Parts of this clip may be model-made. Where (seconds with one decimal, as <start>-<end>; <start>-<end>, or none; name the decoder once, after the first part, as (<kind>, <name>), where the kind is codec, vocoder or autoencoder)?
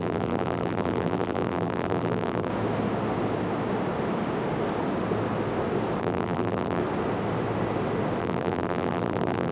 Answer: 0.0-2.5 (vocoder, BigVGAN v2); 6.0-6.8; 8.2-9.5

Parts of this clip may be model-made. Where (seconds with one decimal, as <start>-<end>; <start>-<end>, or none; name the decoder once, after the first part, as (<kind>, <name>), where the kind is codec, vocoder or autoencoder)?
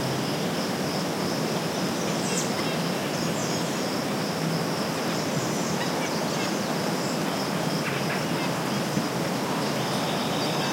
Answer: 3.4-4.5 (vocoder, BigVGAN v2)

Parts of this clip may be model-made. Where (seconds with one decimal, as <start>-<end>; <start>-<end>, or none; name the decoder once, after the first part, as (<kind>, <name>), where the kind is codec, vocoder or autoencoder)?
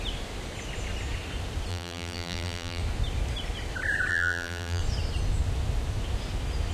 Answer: 1.7-2.8 (vocoder, BigVGAN v2); 4.1-4.8